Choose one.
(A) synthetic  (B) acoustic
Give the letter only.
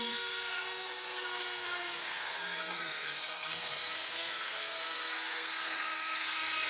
A